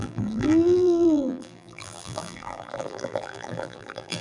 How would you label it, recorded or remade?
remade